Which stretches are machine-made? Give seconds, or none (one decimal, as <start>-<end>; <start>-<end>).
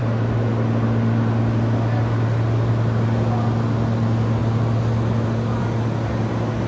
none